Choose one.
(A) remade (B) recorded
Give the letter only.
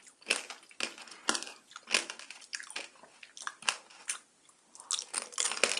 B